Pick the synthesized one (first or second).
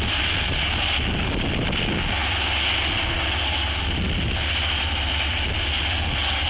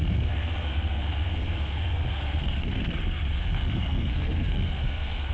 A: second